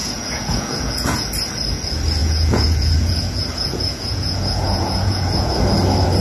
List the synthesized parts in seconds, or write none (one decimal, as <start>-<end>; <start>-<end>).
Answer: 0.0-1.3; 2.2-5.5